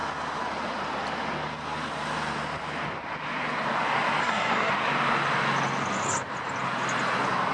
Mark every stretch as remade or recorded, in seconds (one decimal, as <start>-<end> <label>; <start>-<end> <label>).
0.0-4.2 recorded; 4.2-4.7 remade; 4.7-7.5 recorded

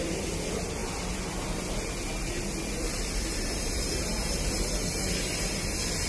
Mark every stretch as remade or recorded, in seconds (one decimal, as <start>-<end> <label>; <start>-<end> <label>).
0.0-6.1 recorded

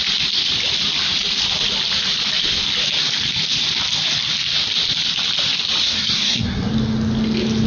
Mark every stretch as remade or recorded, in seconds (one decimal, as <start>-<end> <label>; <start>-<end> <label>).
0.0-5.8 recorded; 5.8-6.7 remade; 6.7-7.7 recorded

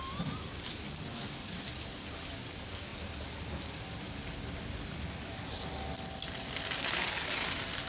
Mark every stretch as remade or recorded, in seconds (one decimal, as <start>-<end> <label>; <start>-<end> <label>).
0.0-7.9 recorded

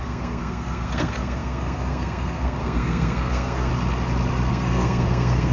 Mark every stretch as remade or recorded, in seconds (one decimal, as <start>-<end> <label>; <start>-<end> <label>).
0.0-3.7 remade; 3.7-4.5 recorded; 4.5-5.5 remade

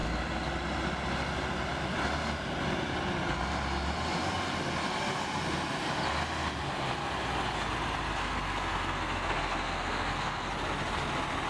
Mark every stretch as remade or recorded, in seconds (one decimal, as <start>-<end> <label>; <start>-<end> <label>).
0.0-8.2 recorded; 8.2-10.5 remade; 10.5-11.5 recorded

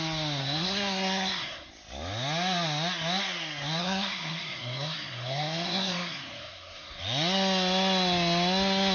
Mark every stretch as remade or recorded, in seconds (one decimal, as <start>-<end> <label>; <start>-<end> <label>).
0.0-0.4 recorded; 0.4-1.7 remade; 1.7-3.8 recorded; 3.8-7.0 remade; 7.0-8.9 recorded

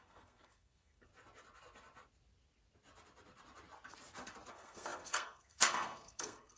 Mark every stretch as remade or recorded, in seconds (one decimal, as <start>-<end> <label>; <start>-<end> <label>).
0.0-1.1 remade; 1.1-4.5 recorded; 4.5-6.6 remade